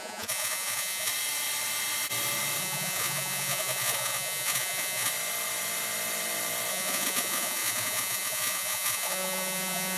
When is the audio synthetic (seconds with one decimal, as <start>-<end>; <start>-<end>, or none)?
0.0-1.1; 2.6-5.1; 6.7-10.0